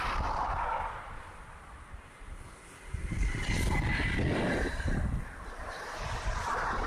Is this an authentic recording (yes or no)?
yes